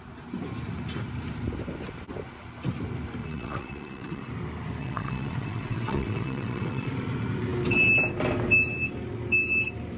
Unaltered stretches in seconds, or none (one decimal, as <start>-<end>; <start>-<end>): 0.0-3.2; 4.3-4.8; 6.9-10.0